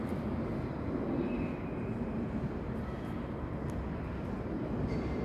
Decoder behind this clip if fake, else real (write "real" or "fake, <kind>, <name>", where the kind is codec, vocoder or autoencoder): real